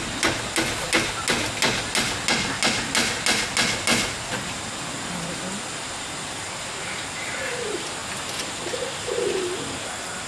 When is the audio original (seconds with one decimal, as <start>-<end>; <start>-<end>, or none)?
0.0-10.3